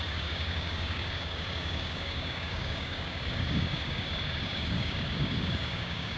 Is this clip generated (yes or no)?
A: yes